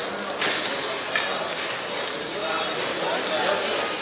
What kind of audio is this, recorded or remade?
recorded